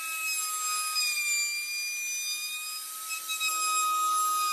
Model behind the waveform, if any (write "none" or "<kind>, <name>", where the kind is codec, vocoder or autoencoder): none